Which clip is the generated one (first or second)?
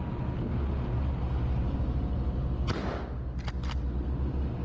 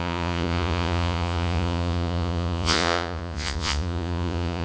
second